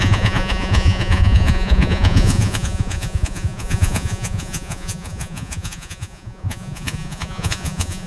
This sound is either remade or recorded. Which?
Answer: remade